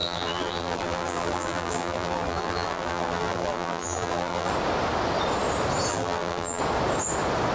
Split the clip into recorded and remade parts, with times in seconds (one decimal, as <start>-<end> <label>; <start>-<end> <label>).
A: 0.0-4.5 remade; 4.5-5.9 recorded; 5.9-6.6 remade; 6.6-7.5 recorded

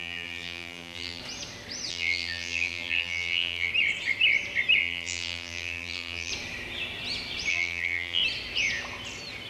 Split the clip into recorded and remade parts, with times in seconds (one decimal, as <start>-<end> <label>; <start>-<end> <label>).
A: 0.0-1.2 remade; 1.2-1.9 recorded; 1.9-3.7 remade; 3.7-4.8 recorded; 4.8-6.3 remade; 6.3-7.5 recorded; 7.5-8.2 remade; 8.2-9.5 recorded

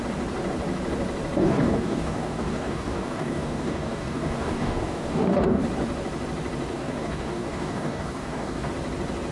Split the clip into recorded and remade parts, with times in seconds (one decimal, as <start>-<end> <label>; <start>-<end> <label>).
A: 0.0-1.4 recorded; 1.4-5.6 remade; 5.6-6.7 recorded; 6.7-8.7 remade; 8.7-9.3 recorded